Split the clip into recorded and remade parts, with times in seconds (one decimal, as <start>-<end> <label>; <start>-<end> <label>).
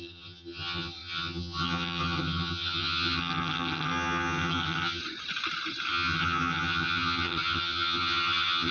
0.0-5.0 remade; 5.0-5.9 recorded; 5.9-8.7 remade